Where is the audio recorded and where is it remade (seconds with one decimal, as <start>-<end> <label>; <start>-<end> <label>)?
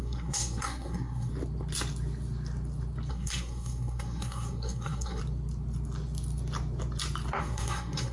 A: 0.0-1.3 remade; 1.3-3.1 recorded; 3.1-5.2 remade; 5.2-7.4 recorded; 7.4-8.1 remade